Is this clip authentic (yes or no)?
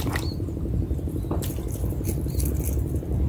yes